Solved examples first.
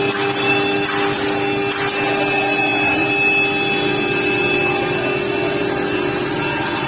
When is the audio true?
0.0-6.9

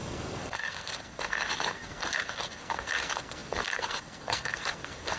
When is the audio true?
none

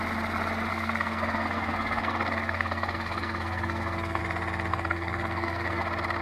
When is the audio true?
0.0-0.7; 4.2-4.7; 5.8-6.2

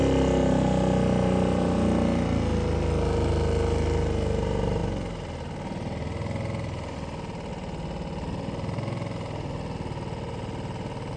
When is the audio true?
0.0-11.2